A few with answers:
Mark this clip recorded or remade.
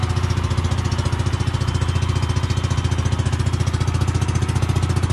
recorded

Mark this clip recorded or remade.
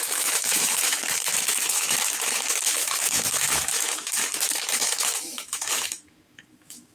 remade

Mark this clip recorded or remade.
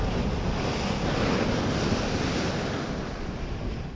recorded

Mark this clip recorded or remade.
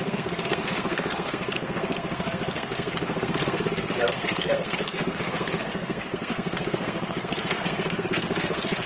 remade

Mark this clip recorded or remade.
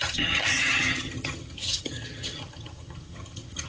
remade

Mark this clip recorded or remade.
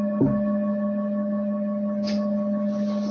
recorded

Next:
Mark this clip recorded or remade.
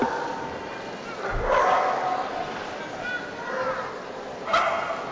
recorded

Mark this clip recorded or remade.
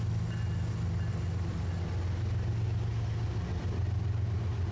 recorded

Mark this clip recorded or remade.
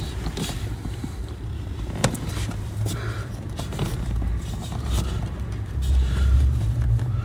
remade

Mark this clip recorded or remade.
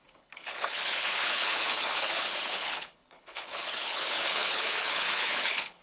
remade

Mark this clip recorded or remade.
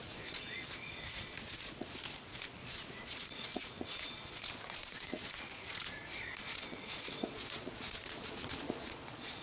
remade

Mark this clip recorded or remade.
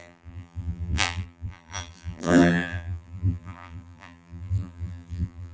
remade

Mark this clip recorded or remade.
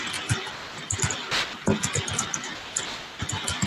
recorded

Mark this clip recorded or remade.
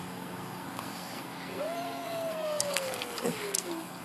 remade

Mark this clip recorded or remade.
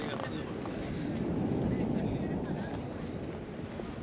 recorded